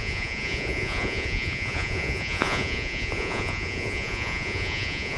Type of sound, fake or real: fake